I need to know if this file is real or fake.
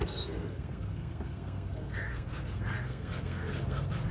fake